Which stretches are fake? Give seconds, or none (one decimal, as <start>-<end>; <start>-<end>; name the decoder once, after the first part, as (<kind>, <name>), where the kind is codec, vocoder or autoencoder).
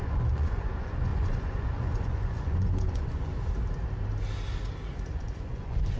0.0-3.3 (vocoder, Vocos); 5.1-6.0